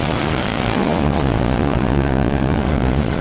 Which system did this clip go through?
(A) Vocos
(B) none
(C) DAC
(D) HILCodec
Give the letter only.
A